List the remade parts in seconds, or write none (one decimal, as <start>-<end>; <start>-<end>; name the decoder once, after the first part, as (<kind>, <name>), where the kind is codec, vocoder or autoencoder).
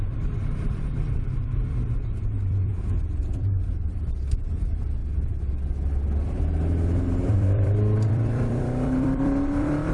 0.0-2.7 (vocoder, BigVGAN v2); 3.2-5.0; 7.3-9.9